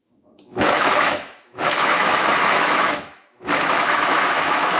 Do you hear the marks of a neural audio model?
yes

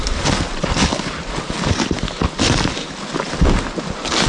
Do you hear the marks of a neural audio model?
no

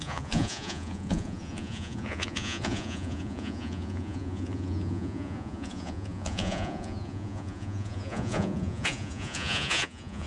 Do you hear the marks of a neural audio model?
yes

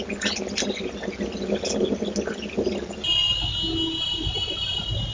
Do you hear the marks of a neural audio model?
no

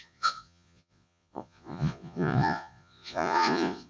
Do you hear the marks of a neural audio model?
yes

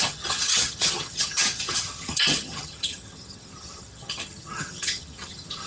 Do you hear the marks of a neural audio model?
yes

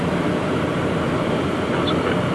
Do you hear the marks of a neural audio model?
no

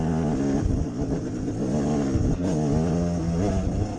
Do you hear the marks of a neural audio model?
no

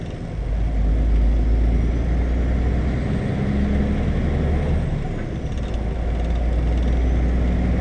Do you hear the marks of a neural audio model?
no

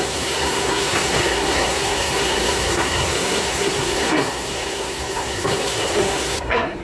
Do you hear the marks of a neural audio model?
yes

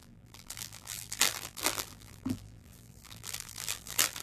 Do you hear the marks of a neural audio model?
yes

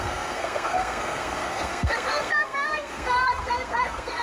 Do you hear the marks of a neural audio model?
yes